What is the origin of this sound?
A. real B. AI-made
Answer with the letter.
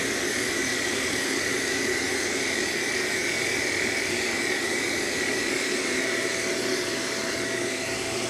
B